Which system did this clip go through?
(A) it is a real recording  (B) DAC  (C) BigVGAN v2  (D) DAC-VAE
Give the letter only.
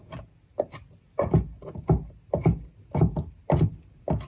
A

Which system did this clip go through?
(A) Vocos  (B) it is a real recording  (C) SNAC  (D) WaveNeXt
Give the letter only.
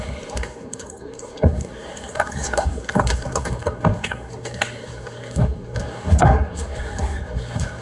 C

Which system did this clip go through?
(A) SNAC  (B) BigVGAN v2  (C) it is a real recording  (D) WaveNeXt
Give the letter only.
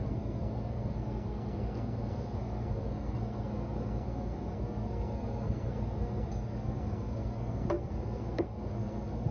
A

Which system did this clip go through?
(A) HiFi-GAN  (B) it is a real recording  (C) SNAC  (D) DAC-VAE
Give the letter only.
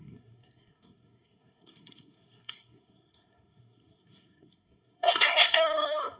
C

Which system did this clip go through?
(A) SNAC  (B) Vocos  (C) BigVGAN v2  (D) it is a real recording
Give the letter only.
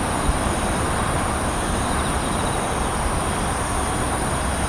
D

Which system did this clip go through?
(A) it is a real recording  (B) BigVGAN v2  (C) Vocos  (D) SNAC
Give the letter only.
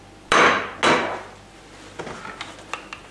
A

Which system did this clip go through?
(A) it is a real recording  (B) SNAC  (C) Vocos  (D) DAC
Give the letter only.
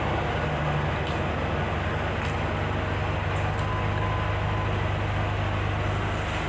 A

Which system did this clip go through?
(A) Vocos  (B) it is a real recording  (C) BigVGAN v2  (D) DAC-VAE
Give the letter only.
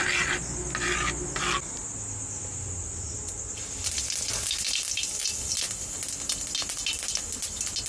B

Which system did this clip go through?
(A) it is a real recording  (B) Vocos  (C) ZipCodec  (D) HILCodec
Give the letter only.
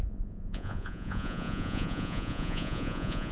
B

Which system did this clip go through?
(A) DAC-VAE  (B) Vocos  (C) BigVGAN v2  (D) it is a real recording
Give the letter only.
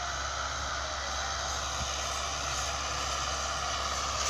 D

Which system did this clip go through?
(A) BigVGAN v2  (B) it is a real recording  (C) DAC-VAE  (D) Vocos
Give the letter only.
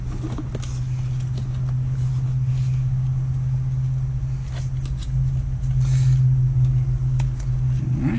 B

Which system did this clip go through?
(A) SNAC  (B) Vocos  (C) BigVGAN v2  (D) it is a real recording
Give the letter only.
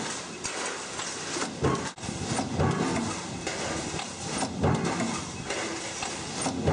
D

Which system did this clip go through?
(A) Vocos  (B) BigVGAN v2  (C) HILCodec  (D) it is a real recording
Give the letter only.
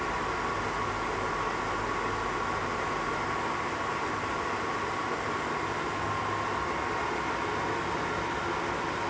D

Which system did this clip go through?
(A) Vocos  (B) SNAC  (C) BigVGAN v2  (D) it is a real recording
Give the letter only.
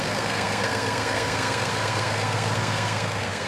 B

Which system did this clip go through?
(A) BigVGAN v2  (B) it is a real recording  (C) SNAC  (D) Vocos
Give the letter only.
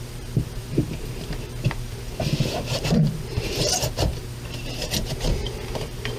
A